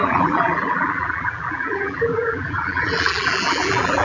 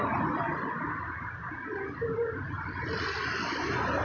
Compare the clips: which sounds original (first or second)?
second